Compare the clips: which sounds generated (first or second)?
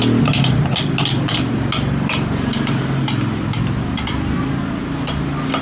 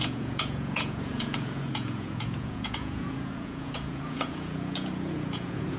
second